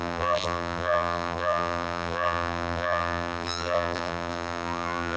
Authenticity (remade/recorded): remade